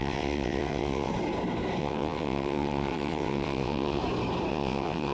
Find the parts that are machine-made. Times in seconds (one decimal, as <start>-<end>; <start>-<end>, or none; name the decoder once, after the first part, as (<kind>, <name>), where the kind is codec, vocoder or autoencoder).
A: 0.0-1.1 (vocoder, WaveNeXt); 1.8-4.0; 4.5-5.1